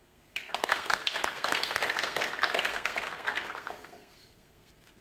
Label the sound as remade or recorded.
remade